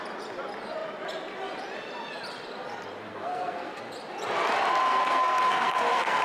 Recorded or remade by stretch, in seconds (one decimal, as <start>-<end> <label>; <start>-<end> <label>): 0.0-3.1 recorded; 3.1-3.8 remade; 3.8-4.9 recorded; 4.9-6.2 remade